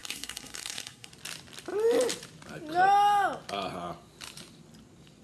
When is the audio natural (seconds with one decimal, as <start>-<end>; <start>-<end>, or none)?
1.1-5.2